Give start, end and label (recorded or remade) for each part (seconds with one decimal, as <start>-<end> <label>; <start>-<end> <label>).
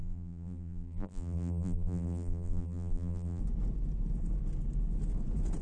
0.0-3.4 remade; 3.4-5.6 recorded